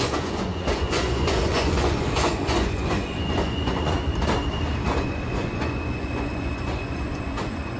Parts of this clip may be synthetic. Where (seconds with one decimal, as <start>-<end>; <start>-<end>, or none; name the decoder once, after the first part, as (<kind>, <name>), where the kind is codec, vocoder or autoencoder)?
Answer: 0.0-4.1 (vocoder, Vocos); 5.0-7.8